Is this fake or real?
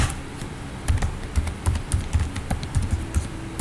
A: real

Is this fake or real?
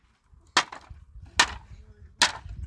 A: real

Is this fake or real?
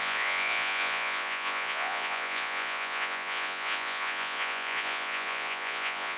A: fake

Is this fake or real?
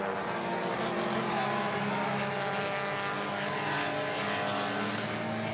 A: real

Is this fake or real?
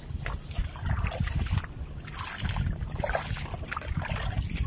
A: real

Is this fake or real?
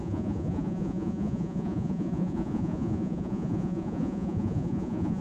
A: fake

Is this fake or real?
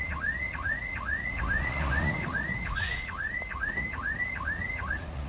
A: fake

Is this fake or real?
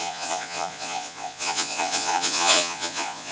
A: fake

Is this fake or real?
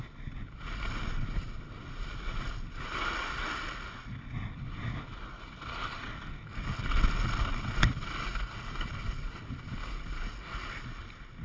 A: real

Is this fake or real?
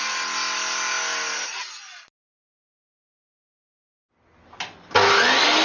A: real